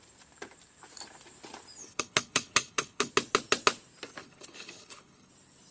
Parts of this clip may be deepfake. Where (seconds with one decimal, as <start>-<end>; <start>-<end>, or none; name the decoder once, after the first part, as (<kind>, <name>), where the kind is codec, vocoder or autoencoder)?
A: 1.8-3.1 (codec, HILCodec); 4.2-5.3